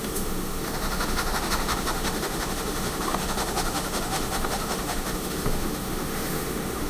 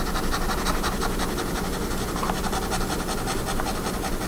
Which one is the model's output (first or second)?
first